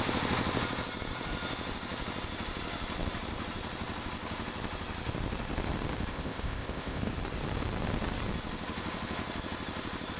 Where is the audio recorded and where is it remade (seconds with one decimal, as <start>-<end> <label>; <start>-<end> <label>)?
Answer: 0.0-6.1 recorded; 6.1-7.1 remade; 7.1-10.2 recorded